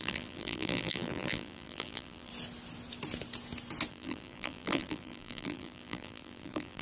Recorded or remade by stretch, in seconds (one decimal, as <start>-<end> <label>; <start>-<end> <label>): 0.0-2.3 remade; 2.3-3.9 recorded; 3.9-6.8 remade